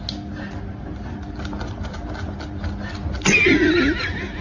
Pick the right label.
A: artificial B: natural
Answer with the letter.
B